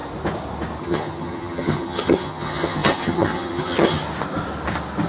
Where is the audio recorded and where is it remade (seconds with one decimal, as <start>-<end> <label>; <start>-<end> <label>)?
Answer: 0.0-0.8 recorded; 0.8-4.0 remade; 4.0-5.1 recorded